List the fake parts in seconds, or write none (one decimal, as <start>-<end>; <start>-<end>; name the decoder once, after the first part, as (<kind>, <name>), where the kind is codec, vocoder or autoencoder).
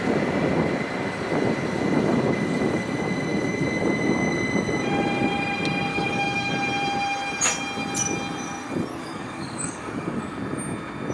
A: 5.9-6.5 (codec, DAC); 8.9-10.2